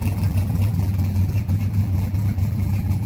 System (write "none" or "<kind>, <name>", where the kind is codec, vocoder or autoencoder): vocoder, BigVGAN v2